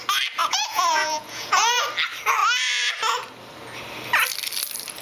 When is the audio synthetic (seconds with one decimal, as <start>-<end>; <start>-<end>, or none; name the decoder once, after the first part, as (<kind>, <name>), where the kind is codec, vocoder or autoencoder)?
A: 0.4-1.8 (vocoder, Vocos)